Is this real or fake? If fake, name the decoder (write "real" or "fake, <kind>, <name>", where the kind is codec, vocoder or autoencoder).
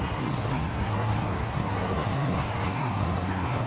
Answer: fake, codec, SNAC